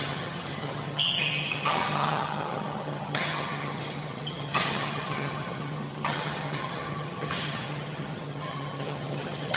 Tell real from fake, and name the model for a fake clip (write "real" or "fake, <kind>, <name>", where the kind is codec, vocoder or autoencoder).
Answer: fake, vocoder, HiFi-GAN